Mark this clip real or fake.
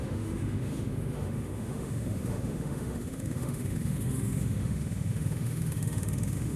fake